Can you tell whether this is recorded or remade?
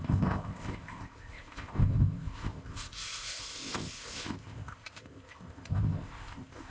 remade